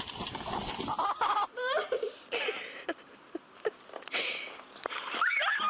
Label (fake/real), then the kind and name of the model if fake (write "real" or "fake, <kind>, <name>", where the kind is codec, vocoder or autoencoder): fake, vocoder, BigVGAN v2